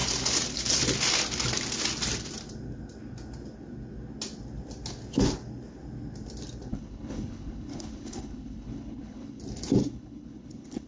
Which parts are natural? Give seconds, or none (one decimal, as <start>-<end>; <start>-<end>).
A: 0.0-6.7; 9.4-9.8